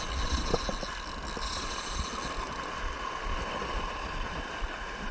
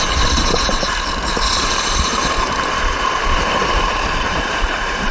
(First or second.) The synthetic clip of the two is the second